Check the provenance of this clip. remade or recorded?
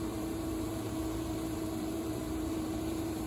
remade